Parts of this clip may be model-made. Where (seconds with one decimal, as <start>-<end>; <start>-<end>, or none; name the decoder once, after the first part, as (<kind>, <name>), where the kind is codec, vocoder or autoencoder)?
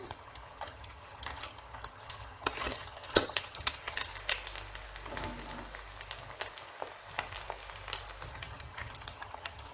0.0-4.1 (vocoder, HiFi-GAN); 8.3-9.7